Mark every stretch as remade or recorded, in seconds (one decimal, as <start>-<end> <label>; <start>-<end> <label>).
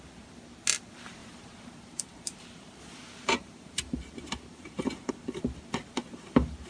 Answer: 0.0-1.2 recorded; 1.2-5.1 remade; 5.1-6.7 recorded